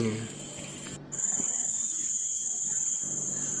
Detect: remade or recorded recorded